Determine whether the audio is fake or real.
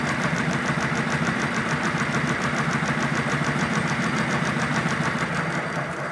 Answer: fake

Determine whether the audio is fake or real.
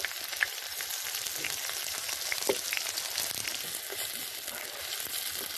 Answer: real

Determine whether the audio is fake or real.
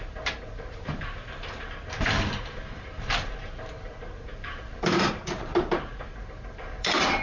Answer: fake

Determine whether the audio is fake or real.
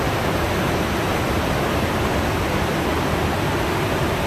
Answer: real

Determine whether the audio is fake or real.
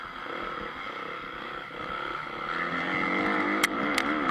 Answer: real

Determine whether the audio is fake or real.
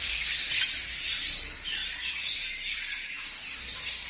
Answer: real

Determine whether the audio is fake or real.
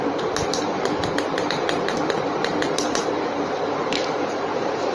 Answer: fake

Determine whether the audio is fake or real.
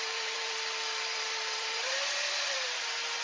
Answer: fake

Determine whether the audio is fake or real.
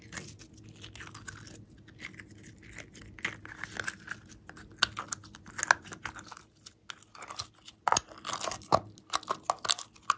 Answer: real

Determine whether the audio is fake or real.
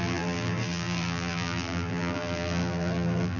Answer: fake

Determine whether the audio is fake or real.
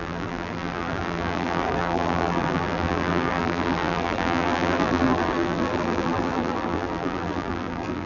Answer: fake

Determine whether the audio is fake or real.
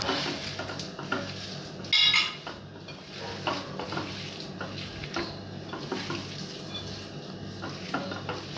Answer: real